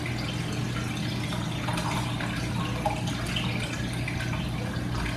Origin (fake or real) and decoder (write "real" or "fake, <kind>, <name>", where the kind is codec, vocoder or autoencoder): real